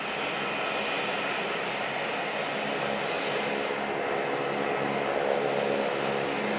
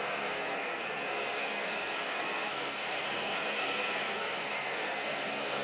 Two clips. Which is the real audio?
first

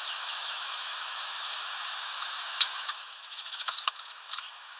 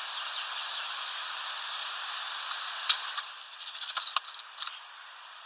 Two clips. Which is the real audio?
second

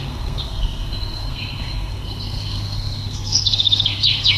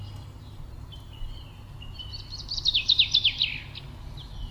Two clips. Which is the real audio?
second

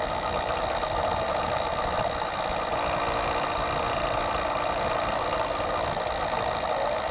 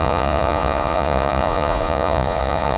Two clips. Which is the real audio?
first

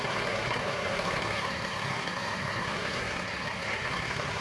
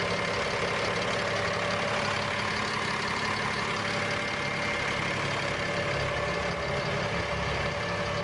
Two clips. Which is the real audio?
second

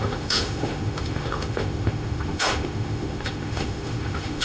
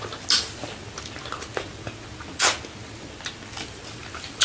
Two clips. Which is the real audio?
second